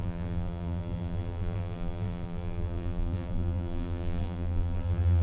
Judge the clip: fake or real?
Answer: fake